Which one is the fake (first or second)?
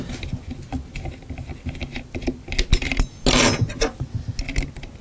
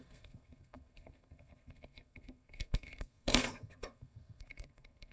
second